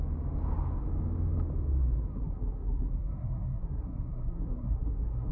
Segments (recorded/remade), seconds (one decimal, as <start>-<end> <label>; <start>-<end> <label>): 0.0-2.1 recorded; 2.1-5.3 remade